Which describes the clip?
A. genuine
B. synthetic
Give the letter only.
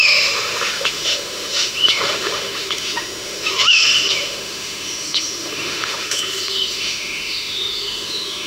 B